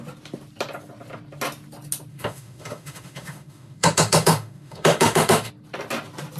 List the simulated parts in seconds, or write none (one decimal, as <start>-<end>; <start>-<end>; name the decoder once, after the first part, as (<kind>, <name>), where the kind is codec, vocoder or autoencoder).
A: 2.1-5.5 (autoencoder, DAC-VAE)